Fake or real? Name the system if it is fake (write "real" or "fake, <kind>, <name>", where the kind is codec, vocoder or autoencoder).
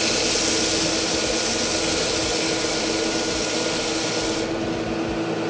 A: real